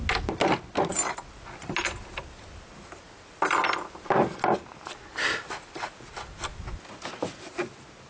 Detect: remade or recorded recorded